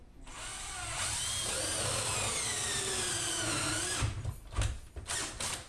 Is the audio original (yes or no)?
yes